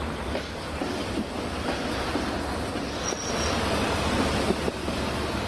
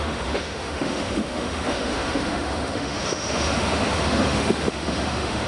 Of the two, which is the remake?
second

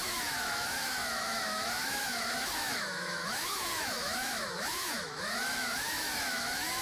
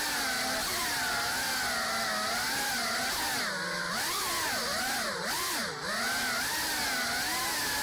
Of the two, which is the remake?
first